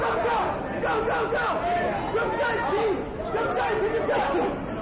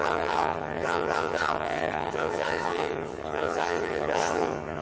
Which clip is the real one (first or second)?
first